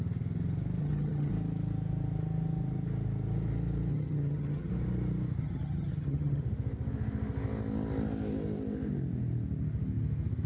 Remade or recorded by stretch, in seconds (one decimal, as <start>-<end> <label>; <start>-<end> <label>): 0.0-0.8 recorded; 0.8-1.3 remade; 1.3-3.9 recorded; 3.9-4.7 remade; 4.7-5.4 recorded; 5.4-6.4 remade; 6.4-10.5 recorded